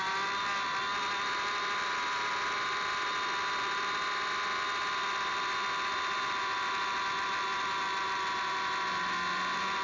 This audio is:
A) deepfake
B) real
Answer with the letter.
B